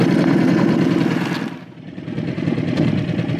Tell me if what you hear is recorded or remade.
recorded